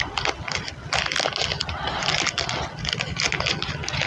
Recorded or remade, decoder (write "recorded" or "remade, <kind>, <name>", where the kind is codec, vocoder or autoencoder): recorded